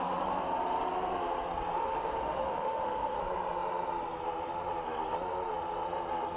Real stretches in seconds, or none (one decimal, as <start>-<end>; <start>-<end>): 0.0-1.8; 3.2-6.4